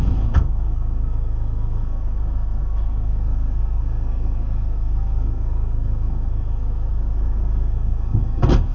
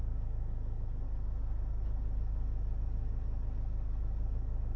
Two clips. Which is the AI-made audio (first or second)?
first